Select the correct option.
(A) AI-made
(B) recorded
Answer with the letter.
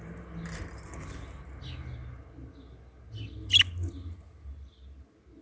B